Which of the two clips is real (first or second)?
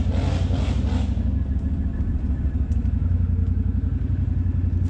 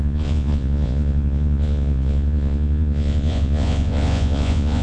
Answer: first